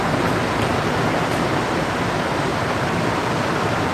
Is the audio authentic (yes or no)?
yes